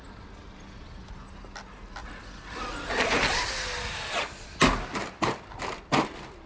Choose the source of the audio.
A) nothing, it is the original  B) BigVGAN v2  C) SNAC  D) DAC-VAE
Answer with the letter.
A